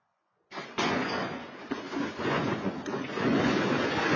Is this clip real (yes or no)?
no